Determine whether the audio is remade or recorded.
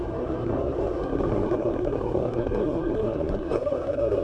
remade